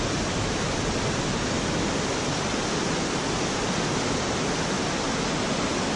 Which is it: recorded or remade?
recorded